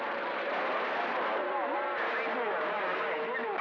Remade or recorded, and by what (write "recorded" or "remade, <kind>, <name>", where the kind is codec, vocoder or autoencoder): recorded